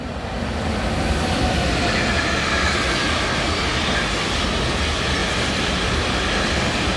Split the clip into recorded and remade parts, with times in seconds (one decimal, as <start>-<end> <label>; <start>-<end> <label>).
0.0-7.0 recorded